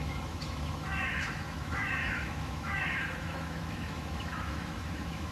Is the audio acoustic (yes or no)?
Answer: no